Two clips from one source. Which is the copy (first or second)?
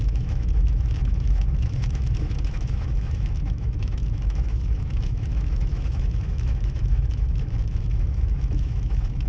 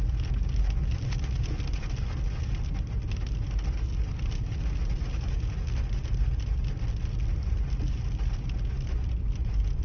first